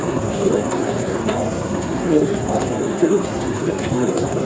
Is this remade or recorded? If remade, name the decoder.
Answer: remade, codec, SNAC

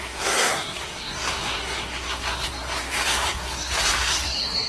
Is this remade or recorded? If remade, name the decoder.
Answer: remade, codec, SNAC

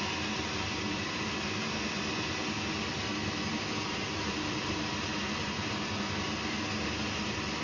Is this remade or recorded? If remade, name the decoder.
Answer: recorded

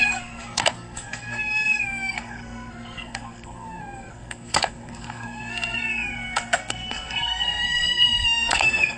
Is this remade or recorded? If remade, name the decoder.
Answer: remade, codec, SNAC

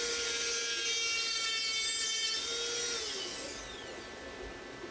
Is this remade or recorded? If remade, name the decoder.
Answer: recorded